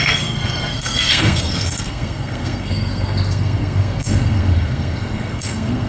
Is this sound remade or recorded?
remade